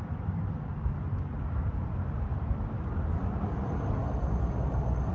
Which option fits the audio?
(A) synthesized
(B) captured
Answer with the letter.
B